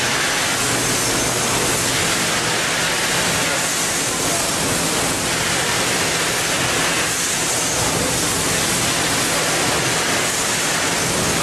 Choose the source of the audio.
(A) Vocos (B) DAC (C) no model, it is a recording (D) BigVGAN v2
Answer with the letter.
C